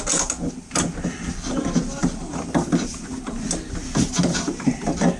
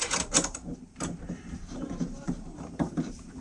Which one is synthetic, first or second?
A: second